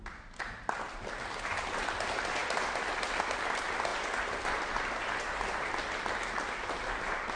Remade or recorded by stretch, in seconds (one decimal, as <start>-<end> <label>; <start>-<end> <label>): 0.0-2.4 recorded; 2.4-3.5 remade; 3.5-7.4 recorded